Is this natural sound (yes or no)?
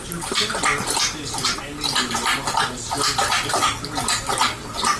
yes